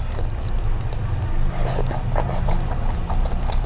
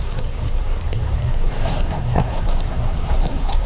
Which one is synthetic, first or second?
second